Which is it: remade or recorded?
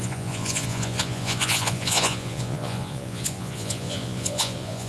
remade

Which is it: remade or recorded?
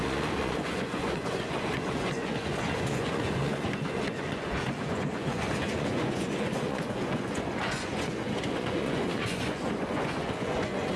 remade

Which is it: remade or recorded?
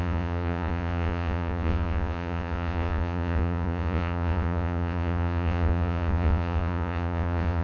remade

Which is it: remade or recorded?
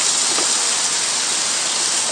recorded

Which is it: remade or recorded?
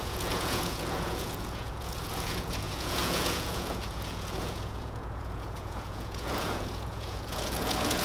remade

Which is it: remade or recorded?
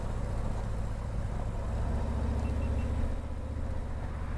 recorded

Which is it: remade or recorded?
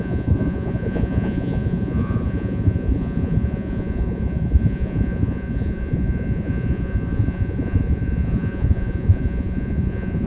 remade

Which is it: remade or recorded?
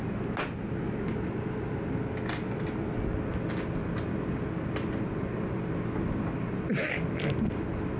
recorded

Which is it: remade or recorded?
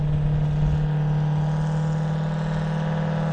recorded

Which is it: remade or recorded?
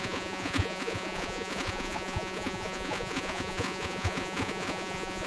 remade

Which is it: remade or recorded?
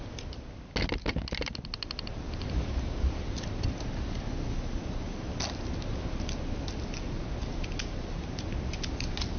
recorded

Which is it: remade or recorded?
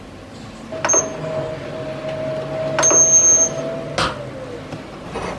recorded